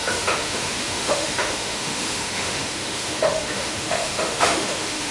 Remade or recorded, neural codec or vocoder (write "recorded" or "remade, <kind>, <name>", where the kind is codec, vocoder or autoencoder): remade, autoencoder, DAC-VAE